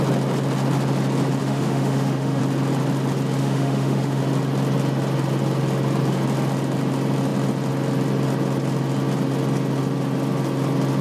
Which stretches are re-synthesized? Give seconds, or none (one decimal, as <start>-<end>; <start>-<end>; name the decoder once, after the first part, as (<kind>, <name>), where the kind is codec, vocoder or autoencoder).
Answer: 1.4-2.4 (autoencoder, DAC-VAE); 3.4-4.2